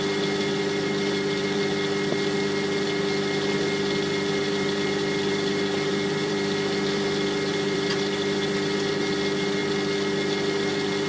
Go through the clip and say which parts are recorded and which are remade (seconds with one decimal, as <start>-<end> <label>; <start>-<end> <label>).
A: 0.0-0.5 recorded; 0.5-1.6 remade; 1.6-4.4 recorded; 4.4-8.9 remade; 8.9-11.1 recorded